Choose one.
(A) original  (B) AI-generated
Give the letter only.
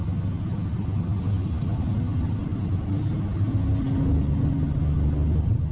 A